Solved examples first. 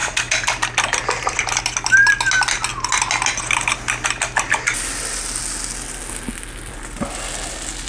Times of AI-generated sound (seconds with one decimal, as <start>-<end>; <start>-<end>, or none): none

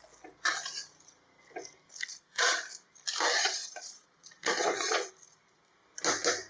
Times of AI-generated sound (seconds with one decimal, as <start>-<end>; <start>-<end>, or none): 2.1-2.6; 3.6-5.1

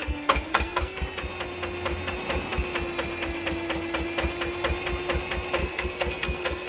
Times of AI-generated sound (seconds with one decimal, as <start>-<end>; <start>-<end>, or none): 0.0-1.0; 5.6-6.7